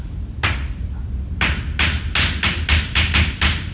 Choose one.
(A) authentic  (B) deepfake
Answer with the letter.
A